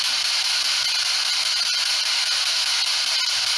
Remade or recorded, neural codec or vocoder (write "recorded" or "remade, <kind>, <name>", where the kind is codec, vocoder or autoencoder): recorded